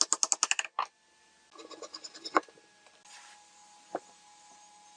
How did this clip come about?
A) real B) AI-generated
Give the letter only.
A